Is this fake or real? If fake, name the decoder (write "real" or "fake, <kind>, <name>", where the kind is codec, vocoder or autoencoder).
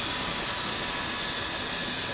real